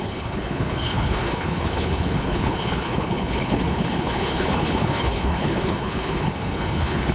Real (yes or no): no